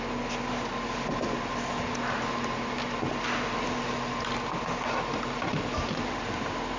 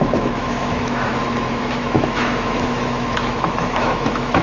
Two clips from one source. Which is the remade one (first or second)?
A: second